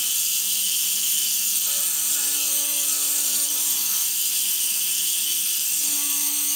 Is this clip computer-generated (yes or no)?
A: yes